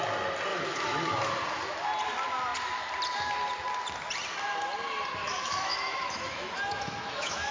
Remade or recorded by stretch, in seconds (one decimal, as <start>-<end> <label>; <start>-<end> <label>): 0.0-0.5 recorded; 0.5-1.3 remade; 1.3-5.2 recorded; 5.2-7.5 remade